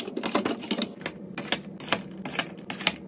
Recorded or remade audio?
recorded